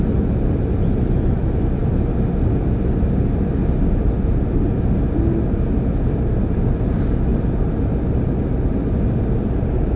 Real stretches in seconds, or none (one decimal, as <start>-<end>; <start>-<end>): 0.0-10.0